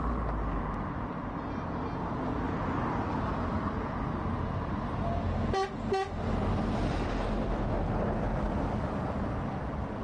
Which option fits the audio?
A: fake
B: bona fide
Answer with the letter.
B